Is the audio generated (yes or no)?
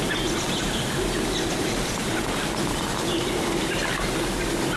no